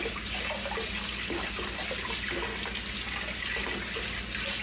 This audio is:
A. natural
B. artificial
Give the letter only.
A